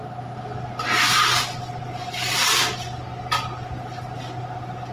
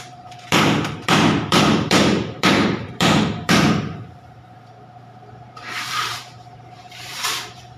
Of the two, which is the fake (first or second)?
second